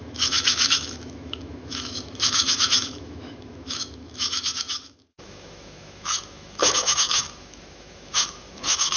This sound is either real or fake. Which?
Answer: fake